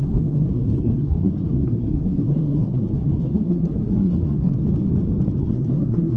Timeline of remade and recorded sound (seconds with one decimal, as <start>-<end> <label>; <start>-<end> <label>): 0.0-4.6 remade; 4.6-5.4 recorded; 5.4-6.2 remade